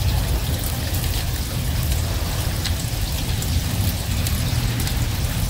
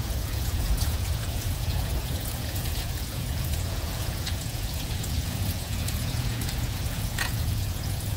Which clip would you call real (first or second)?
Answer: first